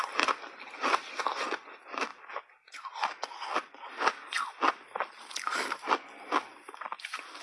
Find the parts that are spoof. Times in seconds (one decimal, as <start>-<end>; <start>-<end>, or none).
none